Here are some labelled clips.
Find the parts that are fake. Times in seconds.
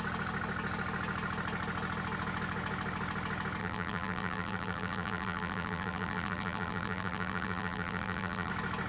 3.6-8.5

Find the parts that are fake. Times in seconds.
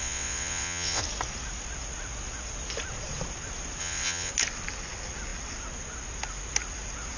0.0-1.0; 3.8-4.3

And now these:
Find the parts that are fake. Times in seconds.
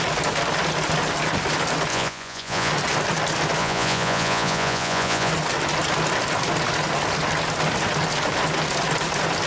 1.9-2.7; 3.6-5.3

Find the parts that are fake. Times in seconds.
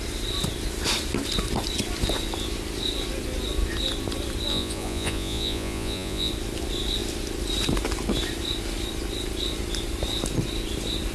4.5-6.3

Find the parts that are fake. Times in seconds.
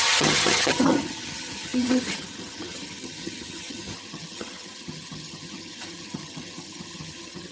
0.0-7.5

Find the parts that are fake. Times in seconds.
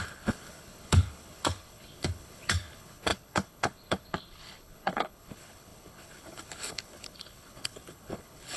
0.0-8.6